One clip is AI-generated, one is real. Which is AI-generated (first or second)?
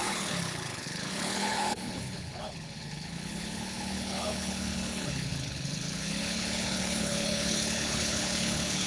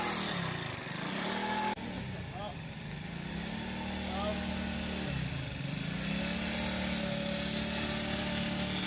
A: first